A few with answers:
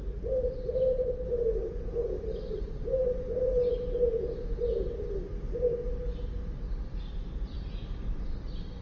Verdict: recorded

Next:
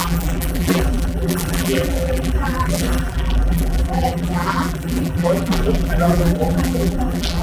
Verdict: remade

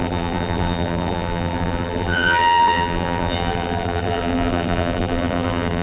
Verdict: remade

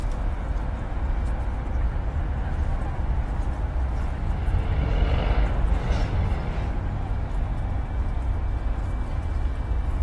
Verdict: recorded